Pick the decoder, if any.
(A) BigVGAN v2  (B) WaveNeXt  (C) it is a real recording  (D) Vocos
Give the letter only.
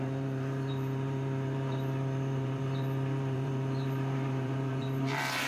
A